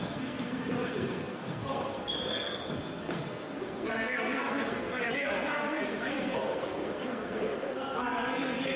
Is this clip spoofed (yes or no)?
yes